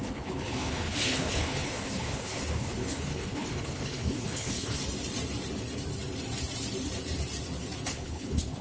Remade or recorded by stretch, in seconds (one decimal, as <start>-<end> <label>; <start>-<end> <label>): 0.0-4.8 remade; 4.8-7.9 recorded; 7.9-8.6 remade